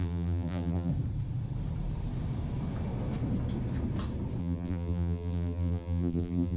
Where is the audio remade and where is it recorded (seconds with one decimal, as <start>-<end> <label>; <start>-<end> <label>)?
0.0-0.9 remade; 0.9-4.4 recorded; 4.4-6.6 remade